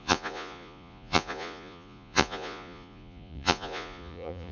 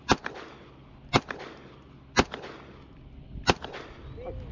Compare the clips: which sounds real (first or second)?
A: second